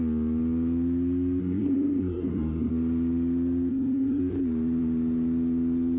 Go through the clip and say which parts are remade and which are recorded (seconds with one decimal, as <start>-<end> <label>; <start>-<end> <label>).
0.0-1.4 recorded; 1.4-2.7 remade; 2.7-3.7 recorded; 3.7-4.2 remade; 4.2-6.0 recorded

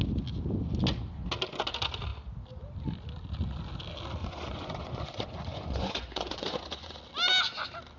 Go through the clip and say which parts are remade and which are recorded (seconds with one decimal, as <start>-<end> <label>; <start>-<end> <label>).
0.0-4.2 recorded; 4.2-7.0 remade; 7.0-8.0 recorded

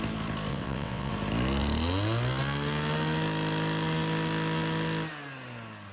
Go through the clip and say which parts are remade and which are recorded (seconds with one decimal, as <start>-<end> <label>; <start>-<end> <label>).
0.0-0.5 recorded; 0.5-1.1 remade; 1.1-5.9 recorded

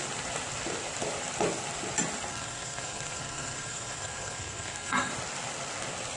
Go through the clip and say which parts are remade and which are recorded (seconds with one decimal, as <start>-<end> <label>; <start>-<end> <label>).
0.0-2.3 recorded; 2.3-5.1 remade; 5.1-6.2 recorded

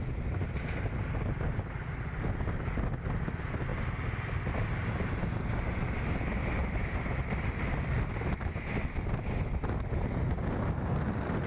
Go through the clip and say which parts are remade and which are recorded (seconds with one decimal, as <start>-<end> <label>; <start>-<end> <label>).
0.0-11.5 recorded

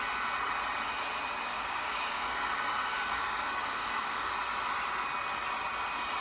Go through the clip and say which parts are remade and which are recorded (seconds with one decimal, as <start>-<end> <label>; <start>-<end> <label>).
0.0-1.5 recorded; 1.5-4.3 remade; 4.3-6.2 recorded

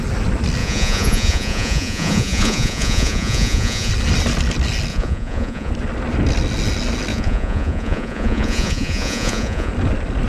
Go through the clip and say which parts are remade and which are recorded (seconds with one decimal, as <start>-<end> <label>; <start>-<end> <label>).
0.0-0.6 recorded; 0.6-3.9 remade; 3.9-4.9 recorded; 4.9-5.7 remade; 5.7-7.1 recorded; 7.1-9.7 remade; 9.7-10.3 recorded